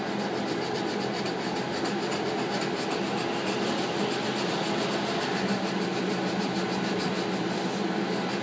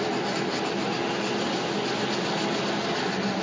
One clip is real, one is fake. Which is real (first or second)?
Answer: second